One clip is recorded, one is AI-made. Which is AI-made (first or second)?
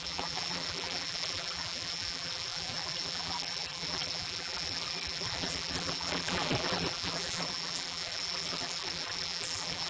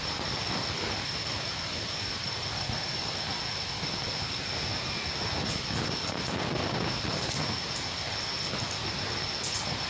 first